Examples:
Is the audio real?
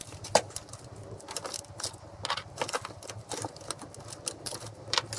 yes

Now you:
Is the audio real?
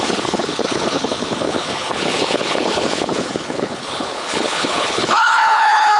no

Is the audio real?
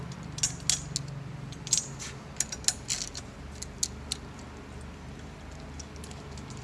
yes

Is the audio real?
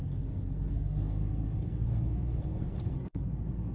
no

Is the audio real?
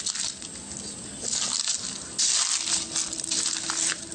yes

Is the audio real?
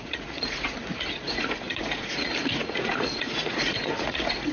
no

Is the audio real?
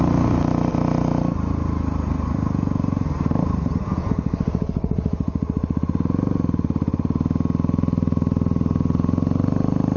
yes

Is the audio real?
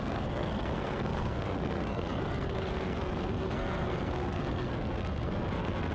no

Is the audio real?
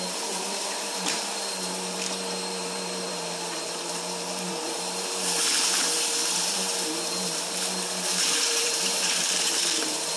no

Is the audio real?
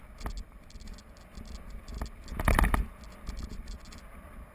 yes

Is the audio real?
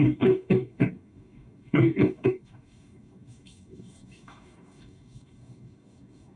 no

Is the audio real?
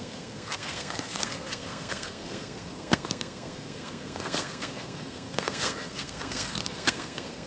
no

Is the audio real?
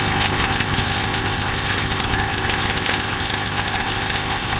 no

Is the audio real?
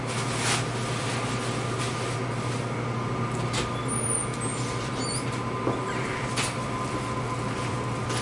yes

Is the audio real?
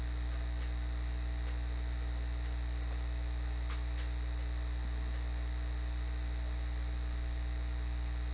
yes